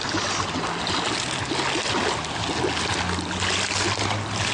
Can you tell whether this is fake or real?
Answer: real